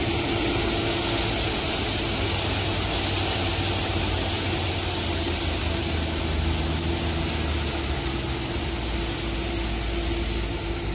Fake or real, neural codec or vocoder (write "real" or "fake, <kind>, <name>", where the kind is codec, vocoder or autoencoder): real